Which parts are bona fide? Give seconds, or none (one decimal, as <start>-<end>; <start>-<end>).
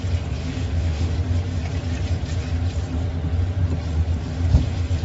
0.0-0.4; 1.1-5.0